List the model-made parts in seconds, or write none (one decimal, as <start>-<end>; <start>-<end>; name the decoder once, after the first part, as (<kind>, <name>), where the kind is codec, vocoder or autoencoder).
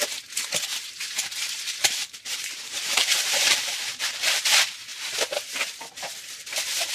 0.7-4.4 (vocoder, BigVGAN v2)